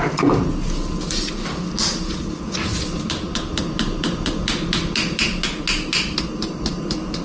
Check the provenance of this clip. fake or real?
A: real